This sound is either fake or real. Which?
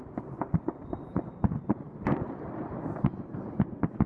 real